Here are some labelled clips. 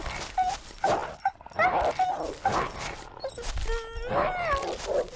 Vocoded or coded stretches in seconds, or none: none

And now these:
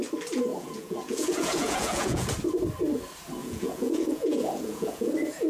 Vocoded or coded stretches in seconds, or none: 0.5-2.3 (vocoder, Vocos); 3.4-5.1

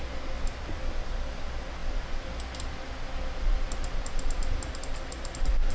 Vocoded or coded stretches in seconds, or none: none

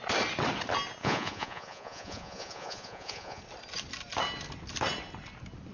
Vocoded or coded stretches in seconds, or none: 1.0-3.4 (vocoder, Vocos)